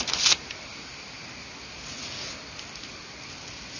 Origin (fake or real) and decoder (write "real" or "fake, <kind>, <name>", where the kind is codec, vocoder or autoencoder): real